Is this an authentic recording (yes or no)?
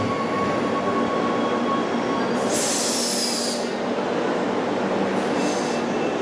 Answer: yes